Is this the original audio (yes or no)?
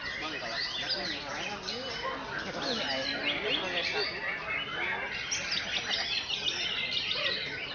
yes